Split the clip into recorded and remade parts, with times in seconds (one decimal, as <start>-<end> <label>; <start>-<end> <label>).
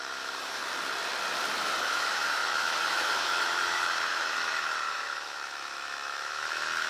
0.0-0.6 remade; 0.6-1.8 recorded; 1.8-6.9 remade